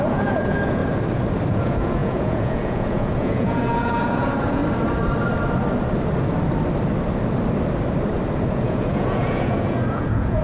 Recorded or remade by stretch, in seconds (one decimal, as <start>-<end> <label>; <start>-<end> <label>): 0.0-0.8 remade; 0.8-1.5 recorded; 1.5-4.6 remade; 4.6-8.5 recorded; 8.5-10.4 remade